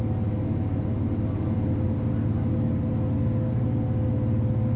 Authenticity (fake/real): real